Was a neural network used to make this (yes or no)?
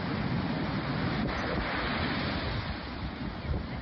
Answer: no